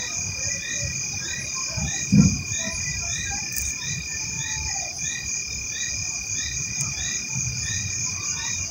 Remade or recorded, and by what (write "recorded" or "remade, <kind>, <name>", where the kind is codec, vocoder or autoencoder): remade, vocoder, BigVGAN v2